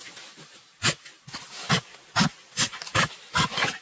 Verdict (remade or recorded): recorded